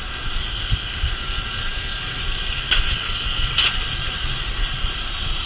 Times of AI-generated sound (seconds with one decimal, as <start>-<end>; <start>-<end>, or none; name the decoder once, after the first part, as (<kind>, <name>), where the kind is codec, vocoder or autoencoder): 0.5-1.1 (codec, ZipCodec)